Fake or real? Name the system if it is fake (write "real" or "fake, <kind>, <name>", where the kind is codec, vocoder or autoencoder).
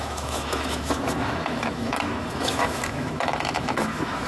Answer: fake, autoencoder, DAC-VAE